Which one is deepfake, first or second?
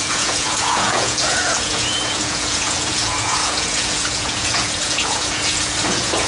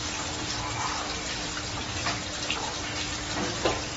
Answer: first